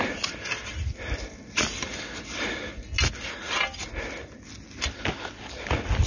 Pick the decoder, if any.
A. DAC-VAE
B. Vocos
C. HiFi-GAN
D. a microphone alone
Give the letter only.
D